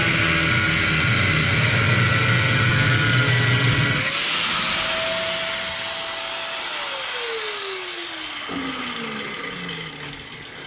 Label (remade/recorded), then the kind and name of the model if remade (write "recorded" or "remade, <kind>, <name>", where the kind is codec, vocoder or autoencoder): recorded